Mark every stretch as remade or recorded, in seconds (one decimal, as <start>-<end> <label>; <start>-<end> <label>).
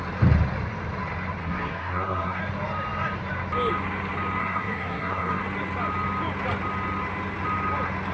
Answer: 0.0-1.4 recorded; 1.4-2.4 remade; 2.4-4.4 recorded; 4.4-5.4 remade; 5.4-8.1 recorded